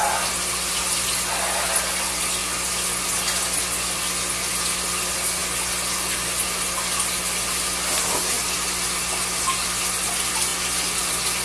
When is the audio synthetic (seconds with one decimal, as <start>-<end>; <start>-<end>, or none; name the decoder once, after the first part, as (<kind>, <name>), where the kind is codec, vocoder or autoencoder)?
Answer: none

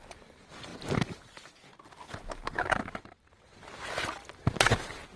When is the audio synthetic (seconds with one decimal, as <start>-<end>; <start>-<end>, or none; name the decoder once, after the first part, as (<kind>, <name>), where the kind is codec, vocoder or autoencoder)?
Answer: none

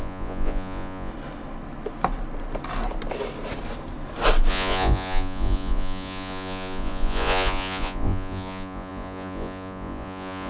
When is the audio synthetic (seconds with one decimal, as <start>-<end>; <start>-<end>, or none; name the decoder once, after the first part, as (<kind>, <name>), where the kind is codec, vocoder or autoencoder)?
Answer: 0.0-1.1 (vocoder, Vocos); 4.5-10.5

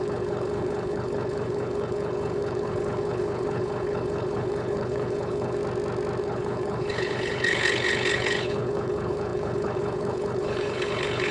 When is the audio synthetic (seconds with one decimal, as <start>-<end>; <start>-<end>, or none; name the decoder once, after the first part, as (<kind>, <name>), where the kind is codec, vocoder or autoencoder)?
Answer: 0.0-5.6 (codec, HILCodec); 6.2-11.3

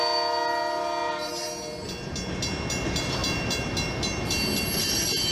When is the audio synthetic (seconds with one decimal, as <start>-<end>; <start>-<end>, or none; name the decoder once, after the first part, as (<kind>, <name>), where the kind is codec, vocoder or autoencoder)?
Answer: none

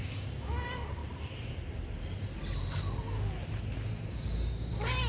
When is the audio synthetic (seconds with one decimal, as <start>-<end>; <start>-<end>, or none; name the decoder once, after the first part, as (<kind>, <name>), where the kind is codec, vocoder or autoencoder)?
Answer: 0.0-1.0 (codec, DAC); 4.1-5.1

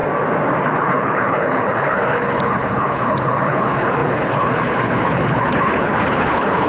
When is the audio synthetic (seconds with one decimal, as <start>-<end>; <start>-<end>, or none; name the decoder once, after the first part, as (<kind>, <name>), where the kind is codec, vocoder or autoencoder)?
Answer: 0.6-6.7 (codec, HILCodec)

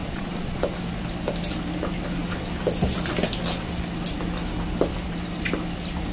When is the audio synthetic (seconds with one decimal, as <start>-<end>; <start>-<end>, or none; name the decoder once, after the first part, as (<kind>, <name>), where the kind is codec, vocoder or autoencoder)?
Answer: 0.0-0.6 (vocoder, Vocos)